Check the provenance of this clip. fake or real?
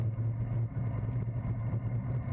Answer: real